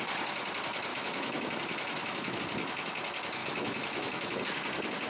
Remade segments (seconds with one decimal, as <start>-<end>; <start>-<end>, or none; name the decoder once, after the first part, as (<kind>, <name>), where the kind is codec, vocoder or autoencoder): 0.9-2.4 (autoencoder, DAC-VAE); 3.4-4.4

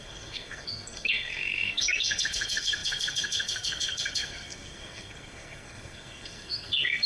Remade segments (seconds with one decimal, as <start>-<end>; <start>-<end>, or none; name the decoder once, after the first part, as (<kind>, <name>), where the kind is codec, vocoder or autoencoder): 0.0-7.1 (codec, SNAC)

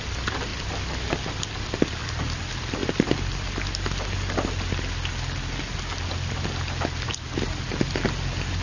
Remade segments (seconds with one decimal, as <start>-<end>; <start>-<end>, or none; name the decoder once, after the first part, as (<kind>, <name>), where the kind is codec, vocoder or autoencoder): none

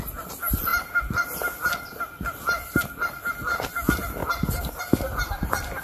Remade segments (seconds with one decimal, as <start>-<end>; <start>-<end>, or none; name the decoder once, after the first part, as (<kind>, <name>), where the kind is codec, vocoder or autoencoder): 0.0-4.2 (vocoder, BigVGAN v2); 4.8-5.8

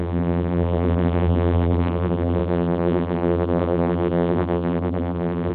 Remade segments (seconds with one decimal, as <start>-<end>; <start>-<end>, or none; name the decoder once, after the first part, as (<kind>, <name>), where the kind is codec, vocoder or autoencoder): 0.0-5.5 (vocoder, BigVGAN v2)

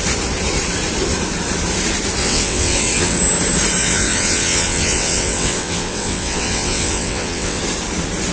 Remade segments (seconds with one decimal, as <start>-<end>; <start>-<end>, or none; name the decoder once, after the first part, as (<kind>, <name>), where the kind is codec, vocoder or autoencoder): 2.2-3.2 (vocoder, WaveNeXt); 3.8-7.6

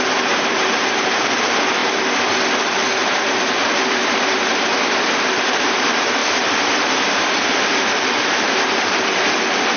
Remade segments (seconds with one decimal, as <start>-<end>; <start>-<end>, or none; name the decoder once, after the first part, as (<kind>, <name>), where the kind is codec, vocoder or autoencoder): 0.0-1.8 (vocoder, BigVGAN v2); 3.0-9.8

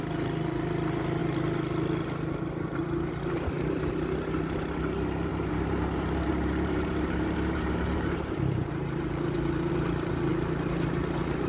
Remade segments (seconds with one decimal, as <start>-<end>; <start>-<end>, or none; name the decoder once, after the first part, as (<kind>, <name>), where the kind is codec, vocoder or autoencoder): 5.3-9.7 (vocoder, BigVGAN v2); 10.3-11.5